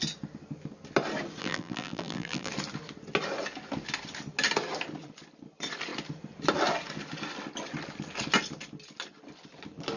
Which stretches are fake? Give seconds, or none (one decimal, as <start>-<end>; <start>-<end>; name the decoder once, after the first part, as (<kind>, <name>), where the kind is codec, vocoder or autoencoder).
1.4-2.5 (vocoder, BigVGAN v2)

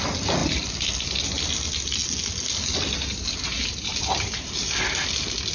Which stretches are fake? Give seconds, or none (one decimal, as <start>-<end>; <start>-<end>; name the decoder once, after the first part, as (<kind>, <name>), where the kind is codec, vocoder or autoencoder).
3.9-4.8 (vocoder, BigVGAN v2)